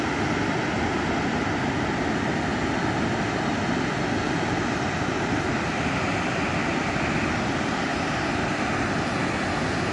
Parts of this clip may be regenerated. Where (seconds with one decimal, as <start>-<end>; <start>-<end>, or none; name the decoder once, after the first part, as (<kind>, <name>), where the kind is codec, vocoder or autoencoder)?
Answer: none